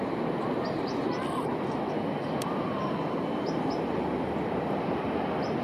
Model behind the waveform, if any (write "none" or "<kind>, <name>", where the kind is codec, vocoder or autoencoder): none